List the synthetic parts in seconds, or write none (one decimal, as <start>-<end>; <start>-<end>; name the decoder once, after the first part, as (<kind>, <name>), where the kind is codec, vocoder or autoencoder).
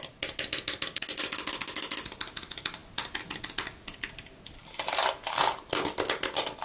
none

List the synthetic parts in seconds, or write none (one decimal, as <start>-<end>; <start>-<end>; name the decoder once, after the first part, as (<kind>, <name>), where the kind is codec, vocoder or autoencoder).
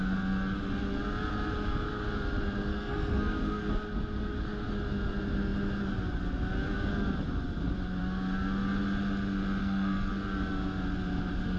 2.7-3.7 (codec, SNAC); 9.6-10.1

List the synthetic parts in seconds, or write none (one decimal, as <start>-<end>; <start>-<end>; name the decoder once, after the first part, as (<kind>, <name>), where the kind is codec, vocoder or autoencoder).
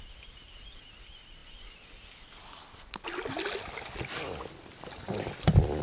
none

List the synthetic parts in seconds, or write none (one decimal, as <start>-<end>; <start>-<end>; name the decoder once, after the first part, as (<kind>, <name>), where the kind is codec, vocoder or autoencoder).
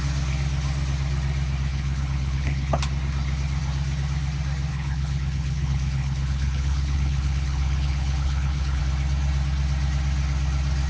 1.7-2.8 (codec, HILCodec); 4.7-8.8